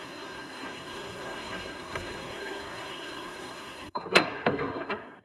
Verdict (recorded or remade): remade